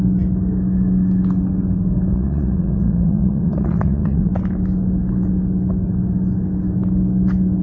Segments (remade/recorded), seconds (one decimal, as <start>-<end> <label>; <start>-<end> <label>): 0.0-2.1 recorded; 2.1-4.3 remade; 4.3-7.6 recorded